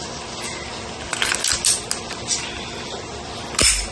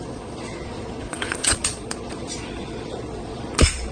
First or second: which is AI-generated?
second